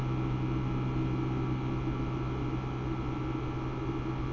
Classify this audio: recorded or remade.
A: recorded